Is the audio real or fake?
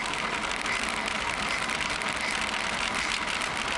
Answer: real